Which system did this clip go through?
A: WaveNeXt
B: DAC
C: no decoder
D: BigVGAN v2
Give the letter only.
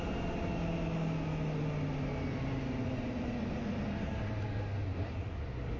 C